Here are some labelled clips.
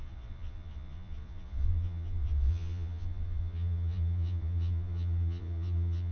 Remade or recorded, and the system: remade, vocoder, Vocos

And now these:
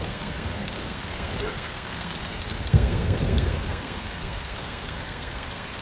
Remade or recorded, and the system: remade, codec, SNAC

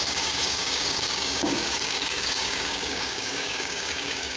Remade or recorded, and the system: remade, codec, DAC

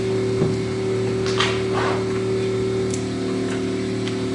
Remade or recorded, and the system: recorded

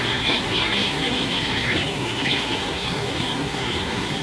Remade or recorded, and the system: remade, codec, SNAC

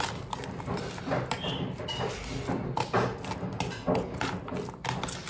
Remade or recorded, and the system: recorded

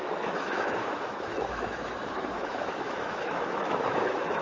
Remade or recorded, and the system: remade, autoencoder, DAC-VAE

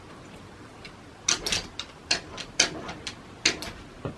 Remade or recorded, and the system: recorded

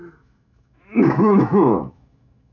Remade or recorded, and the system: remade, autoencoder, DAC-VAE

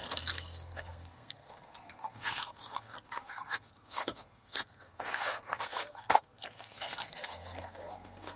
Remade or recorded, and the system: remade, codec, SNAC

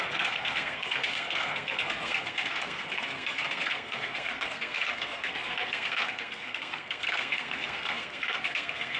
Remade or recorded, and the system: remade, codec, SNAC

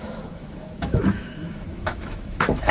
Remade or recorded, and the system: remade, autoencoder, DAC-VAE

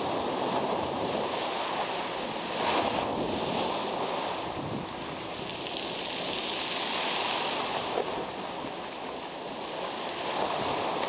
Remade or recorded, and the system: recorded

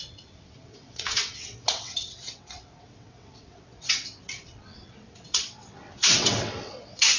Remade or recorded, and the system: remade, vocoder, WaveNeXt